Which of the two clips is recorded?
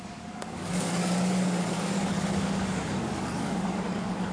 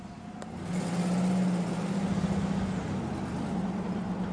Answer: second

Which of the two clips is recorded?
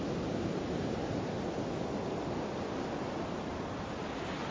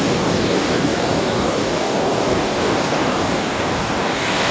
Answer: first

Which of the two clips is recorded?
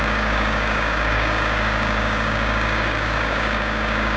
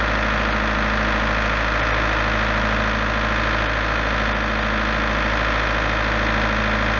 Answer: second